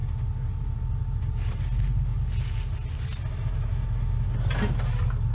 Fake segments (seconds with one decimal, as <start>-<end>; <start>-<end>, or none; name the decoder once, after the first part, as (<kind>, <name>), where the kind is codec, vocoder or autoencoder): none